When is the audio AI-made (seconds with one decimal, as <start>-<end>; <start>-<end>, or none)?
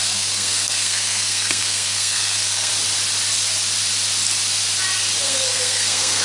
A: 0.0-2.7; 5.2-6.2